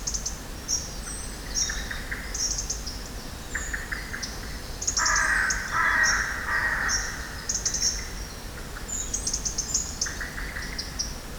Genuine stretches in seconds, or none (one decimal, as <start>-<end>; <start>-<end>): 0.0-11.4